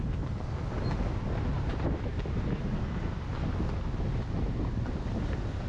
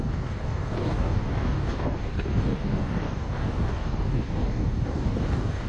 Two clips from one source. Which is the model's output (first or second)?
second